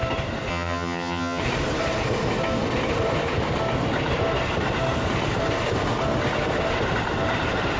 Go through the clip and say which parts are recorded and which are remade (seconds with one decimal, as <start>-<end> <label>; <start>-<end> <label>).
0.0-0.5 recorded; 0.5-1.4 remade; 1.4-7.8 recorded